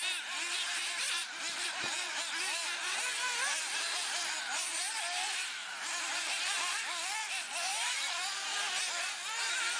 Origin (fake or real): real